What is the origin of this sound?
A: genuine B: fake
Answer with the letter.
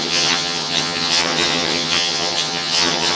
B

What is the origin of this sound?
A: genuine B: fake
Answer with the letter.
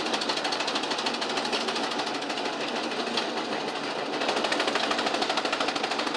A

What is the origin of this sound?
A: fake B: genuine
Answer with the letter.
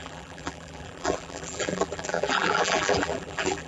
A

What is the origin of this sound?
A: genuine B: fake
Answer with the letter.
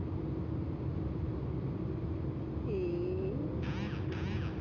A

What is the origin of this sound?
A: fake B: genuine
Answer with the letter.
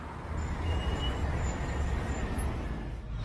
B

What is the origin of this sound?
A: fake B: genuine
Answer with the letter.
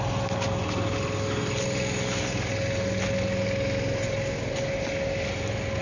B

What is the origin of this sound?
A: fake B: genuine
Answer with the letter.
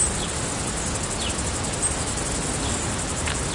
B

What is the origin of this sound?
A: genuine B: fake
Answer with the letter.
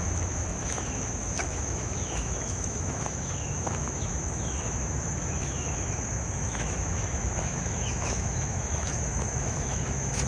B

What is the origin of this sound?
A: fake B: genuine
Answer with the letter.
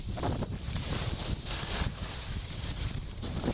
A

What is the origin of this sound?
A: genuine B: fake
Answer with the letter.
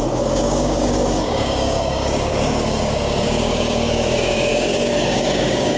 B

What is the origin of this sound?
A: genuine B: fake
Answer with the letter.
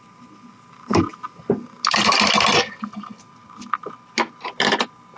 A